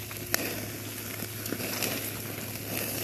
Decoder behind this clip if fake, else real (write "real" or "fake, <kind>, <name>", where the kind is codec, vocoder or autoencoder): real